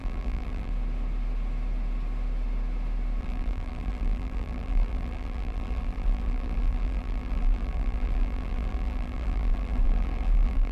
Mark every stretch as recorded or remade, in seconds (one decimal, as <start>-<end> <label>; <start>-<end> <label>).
0.0-0.7 remade; 0.7-3.2 recorded; 3.2-10.7 remade